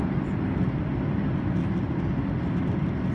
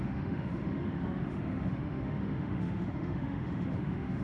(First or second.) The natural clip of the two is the first